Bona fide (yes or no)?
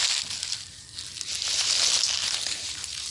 yes